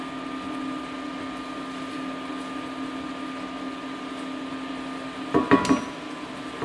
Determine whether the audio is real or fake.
real